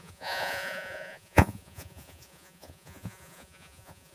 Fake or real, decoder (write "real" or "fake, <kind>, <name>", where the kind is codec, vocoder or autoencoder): fake, vocoder, Vocos